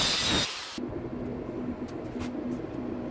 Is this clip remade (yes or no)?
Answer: no